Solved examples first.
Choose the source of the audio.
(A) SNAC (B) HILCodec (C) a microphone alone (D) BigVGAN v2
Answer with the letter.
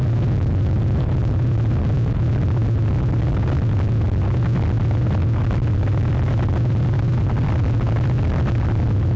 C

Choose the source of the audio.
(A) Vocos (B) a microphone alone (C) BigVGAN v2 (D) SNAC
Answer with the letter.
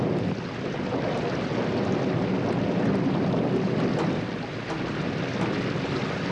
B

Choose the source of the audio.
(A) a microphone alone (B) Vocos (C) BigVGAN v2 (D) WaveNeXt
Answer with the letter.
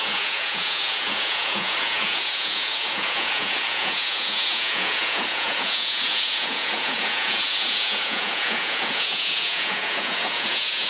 B